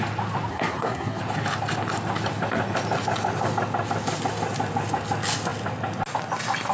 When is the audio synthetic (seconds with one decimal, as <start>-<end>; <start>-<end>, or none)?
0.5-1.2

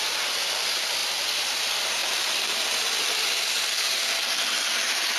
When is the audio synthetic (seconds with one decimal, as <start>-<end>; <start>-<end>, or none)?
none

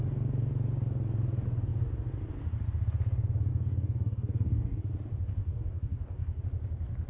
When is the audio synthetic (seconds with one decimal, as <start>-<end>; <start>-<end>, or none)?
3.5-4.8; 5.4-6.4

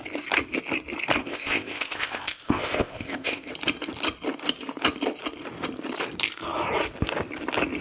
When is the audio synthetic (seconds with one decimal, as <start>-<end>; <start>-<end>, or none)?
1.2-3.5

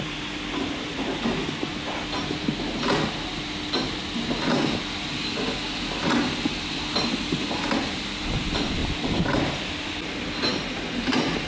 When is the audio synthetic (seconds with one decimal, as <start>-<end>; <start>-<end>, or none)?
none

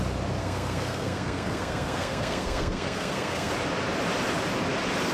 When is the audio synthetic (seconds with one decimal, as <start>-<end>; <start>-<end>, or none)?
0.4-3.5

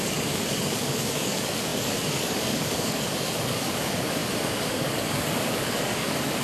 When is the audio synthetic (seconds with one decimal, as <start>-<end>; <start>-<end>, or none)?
0.0-6.4